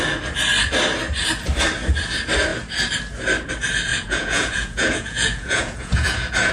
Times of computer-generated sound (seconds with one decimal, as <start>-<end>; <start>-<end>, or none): 3.9-6.5